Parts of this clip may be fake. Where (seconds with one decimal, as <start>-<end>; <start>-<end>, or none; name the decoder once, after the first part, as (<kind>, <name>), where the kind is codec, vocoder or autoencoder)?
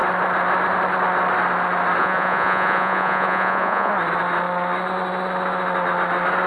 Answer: 2.0-3.9 (vocoder, Vocos)